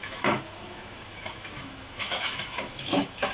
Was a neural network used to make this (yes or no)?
yes